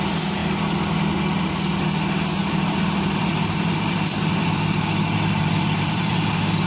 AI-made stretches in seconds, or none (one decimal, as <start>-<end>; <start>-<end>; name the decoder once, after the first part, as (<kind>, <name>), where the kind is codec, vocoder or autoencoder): 2.4-6.3 (vocoder, BigVGAN v2)